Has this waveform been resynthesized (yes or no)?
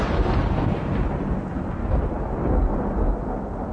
no